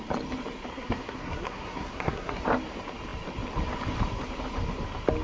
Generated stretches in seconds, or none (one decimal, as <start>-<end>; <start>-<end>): 0.7-2.4